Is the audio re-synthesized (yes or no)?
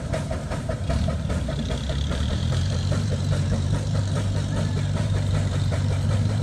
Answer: yes